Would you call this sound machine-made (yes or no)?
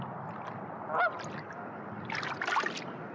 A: no